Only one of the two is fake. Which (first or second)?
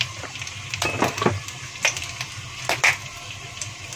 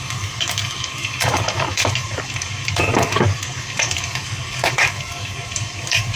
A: second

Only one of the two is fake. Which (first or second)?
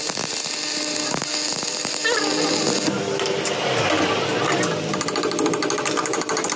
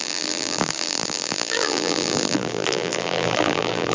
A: second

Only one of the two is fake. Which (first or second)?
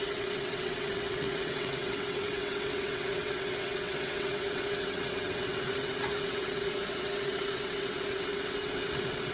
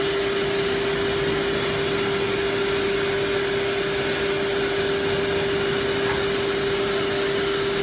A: first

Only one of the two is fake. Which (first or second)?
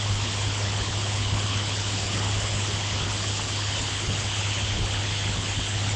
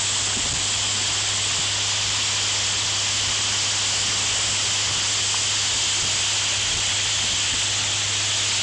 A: first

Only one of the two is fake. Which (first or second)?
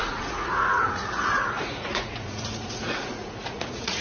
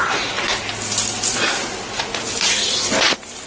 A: first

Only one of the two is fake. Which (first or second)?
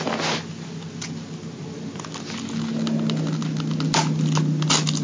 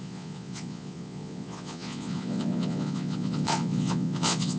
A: second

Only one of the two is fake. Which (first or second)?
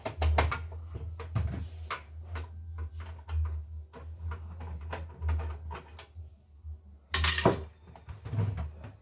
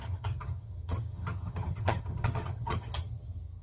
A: second